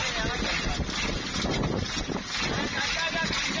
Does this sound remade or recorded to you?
recorded